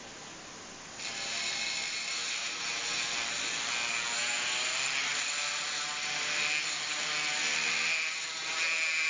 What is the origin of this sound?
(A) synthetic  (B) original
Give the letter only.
B